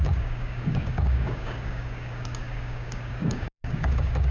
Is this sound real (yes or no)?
no